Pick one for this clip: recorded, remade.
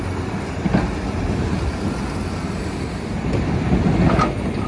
recorded